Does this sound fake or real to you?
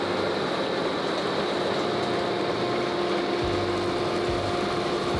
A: real